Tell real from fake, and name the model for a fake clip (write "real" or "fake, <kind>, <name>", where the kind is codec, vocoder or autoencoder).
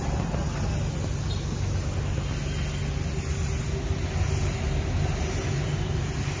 real